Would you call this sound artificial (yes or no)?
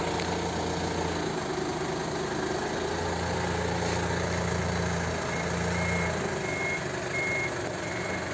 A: no